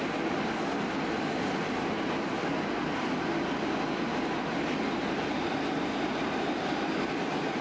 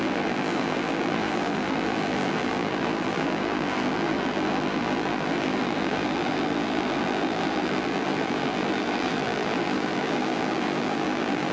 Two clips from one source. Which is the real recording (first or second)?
first